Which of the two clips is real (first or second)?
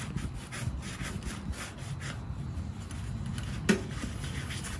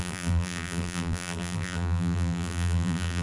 first